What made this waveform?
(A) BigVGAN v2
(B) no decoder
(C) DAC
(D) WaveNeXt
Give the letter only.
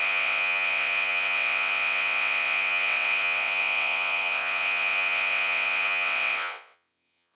D